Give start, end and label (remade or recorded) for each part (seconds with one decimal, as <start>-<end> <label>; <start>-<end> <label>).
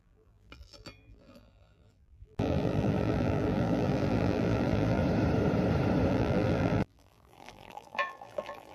0.0-5.0 remade; 5.0-6.1 recorded; 6.1-8.7 remade